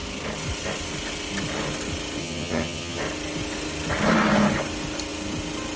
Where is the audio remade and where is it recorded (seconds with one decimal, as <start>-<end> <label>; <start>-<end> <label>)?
0.0-2.2 recorded; 2.2-3.0 remade; 3.0-5.8 recorded